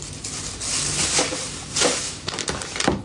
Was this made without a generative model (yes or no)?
yes